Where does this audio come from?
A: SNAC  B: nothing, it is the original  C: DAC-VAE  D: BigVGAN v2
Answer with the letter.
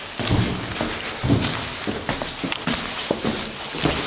B